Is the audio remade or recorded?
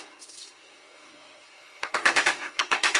remade